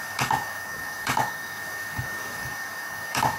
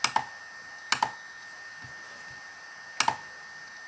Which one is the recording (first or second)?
second